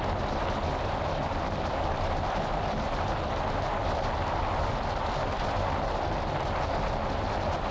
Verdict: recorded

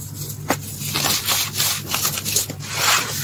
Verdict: recorded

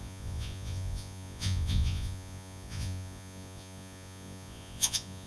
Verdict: remade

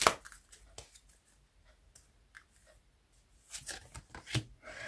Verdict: recorded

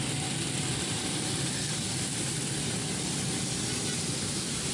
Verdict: recorded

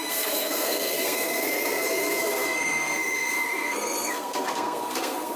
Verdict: remade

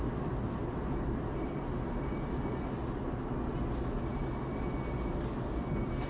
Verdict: recorded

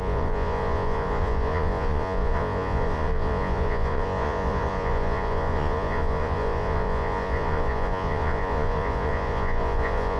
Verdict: remade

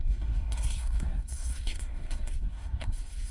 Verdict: remade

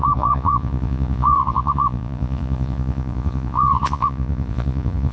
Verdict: remade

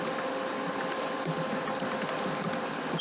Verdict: recorded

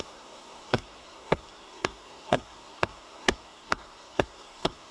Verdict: remade